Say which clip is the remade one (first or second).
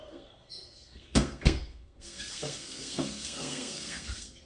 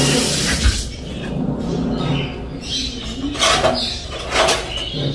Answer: first